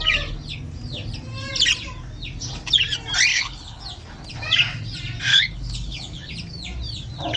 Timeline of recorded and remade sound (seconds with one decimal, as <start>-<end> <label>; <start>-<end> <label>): 0.0-3.3 recorded; 3.3-3.8 remade; 3.8-5.3 recorded; 5.3-6.3 remade; 6.3-7.4 recorded